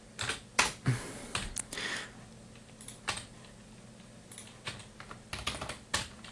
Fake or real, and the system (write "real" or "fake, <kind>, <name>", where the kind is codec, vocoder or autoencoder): real